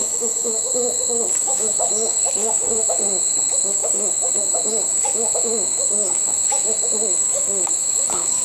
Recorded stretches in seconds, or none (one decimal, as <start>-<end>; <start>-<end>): none